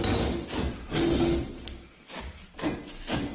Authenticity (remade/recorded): recorded